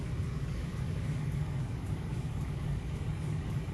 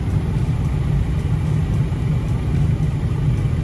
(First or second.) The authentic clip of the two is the second